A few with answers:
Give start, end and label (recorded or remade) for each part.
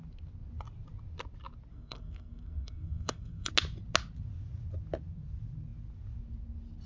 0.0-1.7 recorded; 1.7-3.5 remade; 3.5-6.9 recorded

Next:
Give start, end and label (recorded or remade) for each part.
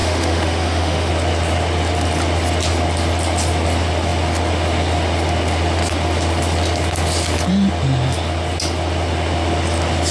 0.0-1.1 remade; 1.1-10.1 recorded